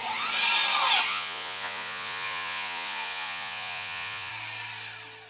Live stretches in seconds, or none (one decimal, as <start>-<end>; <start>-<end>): 0.0-1.1; 4.3-5.3